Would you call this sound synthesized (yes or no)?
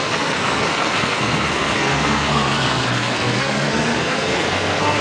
yes